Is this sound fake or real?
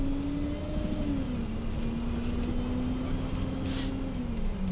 real